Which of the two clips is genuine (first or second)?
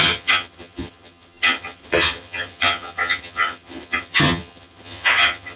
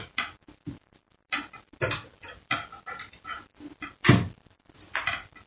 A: second